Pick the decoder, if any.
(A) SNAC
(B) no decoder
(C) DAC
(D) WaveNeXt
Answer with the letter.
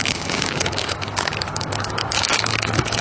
C